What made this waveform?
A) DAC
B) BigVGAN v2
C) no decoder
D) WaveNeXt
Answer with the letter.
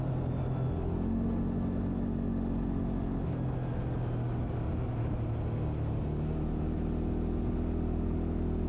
C